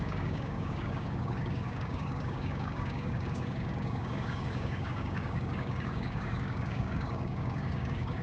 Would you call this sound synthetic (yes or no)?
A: yes